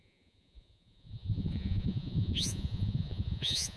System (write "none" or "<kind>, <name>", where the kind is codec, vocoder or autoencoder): vocoder, Vocos